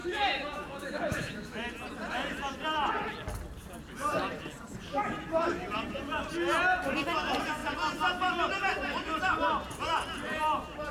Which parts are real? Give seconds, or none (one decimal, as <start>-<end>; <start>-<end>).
1.7-10.9